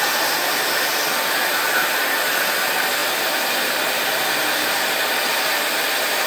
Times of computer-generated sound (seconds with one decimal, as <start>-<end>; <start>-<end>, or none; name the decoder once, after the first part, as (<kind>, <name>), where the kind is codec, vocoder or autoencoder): none